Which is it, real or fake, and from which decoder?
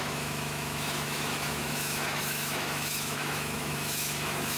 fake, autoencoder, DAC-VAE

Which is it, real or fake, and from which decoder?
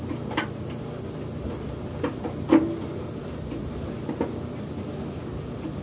real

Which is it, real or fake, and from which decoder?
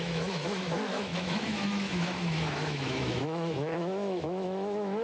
fake, autoencoder, DAC-VAE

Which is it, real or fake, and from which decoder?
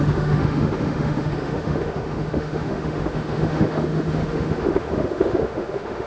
fake, autoencoder, DAC-VAE